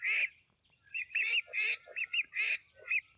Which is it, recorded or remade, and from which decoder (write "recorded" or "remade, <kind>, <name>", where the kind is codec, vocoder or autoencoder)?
recorded